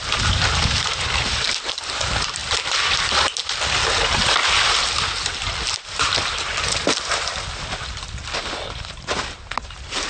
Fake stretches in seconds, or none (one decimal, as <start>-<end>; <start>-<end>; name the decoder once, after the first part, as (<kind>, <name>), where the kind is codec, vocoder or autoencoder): none